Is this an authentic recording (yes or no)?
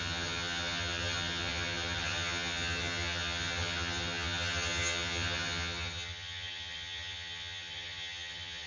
no